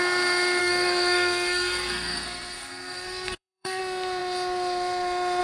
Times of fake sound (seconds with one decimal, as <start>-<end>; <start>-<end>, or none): 0.6-3.8